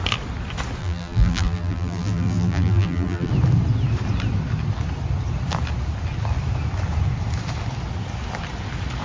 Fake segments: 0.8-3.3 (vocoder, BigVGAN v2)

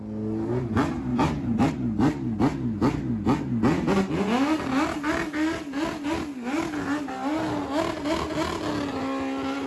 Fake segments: 1.1-1.7 (vocoder, BigVGAN v2)

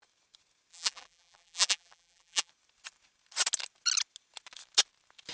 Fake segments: 0.7-2.5 (vocoder, BigVGAN v2)

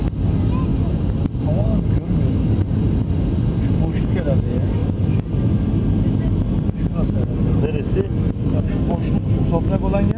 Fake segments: 0.7-1.4 (vocoder, BigVGAN v2)